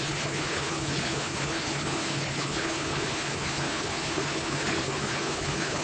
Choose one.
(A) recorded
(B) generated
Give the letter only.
B